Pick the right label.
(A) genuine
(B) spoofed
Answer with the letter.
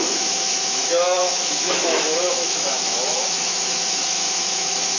B